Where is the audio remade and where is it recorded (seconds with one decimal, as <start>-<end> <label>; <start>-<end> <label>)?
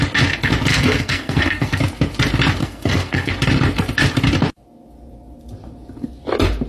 0.0-0.7 recorded; 0.7-1.8 remade; 1.8-2.6 recorded; 2.6-3.3 remade; 3.3-6.7 recorded